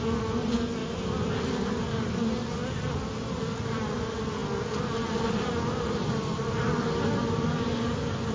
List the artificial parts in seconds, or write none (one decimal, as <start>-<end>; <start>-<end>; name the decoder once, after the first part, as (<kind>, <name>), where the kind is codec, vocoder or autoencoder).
none